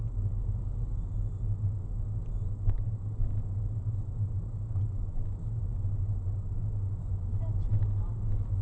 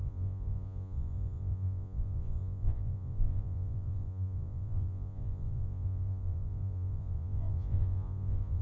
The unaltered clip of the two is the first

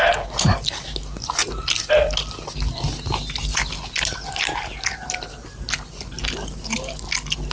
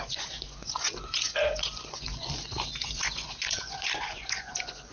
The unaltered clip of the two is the first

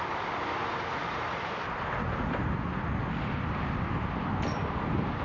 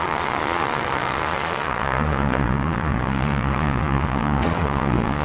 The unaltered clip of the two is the first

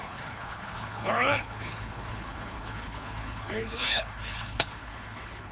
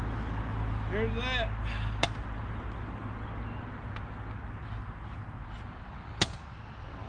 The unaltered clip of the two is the second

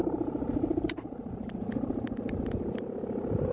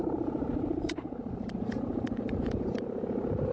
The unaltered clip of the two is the first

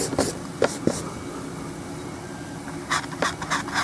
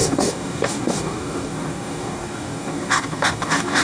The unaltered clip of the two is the first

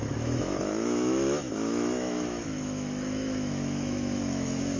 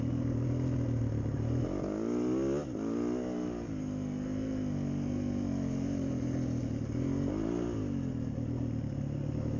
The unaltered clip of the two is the second